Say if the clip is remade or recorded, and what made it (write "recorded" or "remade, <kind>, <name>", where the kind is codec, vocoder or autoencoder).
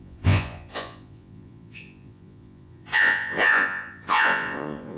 remade, vocoder, Vocos